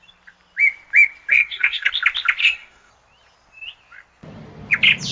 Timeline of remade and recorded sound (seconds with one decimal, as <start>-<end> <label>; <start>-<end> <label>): 0.0-1.3 recorded; 1.3-1.9 remade; 1.9-2.4 recorded; 2.4-2.9 remade; 2.9-5.1 recorded